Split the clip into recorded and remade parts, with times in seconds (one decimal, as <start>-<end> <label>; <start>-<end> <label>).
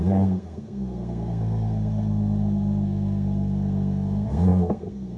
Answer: 0.0-5.2 remade